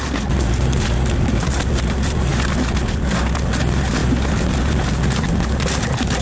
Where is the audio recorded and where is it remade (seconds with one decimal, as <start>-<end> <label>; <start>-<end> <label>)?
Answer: 0.0-6.2 recorded